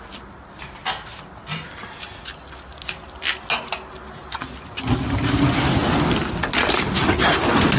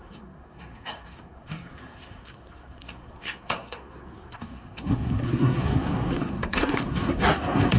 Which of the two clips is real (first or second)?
first